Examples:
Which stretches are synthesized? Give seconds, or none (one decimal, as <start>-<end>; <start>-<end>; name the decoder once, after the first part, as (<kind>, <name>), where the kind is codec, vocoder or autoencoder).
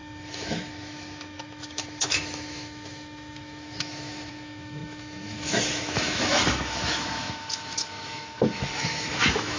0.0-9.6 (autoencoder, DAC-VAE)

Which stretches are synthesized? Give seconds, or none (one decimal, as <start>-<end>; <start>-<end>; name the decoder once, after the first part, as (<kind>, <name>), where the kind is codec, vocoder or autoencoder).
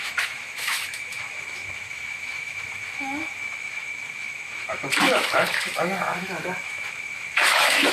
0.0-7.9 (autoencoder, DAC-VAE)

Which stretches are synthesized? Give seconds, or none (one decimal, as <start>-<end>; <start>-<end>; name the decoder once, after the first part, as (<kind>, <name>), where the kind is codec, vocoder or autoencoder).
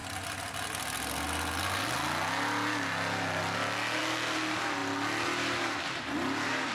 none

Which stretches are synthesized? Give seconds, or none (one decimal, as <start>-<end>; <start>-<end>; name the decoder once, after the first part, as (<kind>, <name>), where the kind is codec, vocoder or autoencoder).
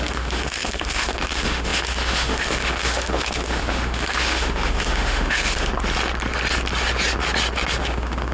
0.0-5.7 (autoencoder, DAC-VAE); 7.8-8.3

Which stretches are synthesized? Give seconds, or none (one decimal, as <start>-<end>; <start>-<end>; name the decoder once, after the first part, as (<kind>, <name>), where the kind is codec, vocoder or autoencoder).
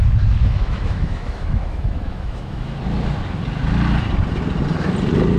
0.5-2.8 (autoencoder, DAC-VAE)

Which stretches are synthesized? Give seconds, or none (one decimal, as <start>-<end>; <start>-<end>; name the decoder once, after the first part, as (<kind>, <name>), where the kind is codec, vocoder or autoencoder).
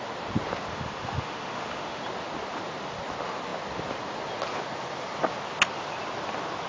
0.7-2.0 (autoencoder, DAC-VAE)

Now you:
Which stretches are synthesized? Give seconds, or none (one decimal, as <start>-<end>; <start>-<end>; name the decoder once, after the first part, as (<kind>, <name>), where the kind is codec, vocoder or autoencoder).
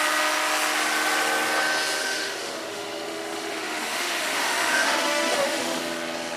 2.0-5.8 (autoencoder, DAC-VAE)